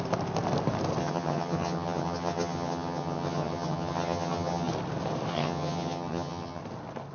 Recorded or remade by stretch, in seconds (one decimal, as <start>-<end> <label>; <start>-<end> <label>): 0.0-1.0 recorded; 1.0-4.7 remade; 4.7-5.3 recorded; 5.3-6.6 remade; 6.6-7.1 recorded